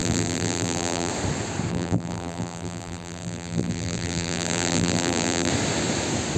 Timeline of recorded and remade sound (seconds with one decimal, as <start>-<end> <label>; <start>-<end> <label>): 0.0-1.1 remade; 1.1-1.7 recorded; 1.7-5.5 remade; 5.5-6.4 recorded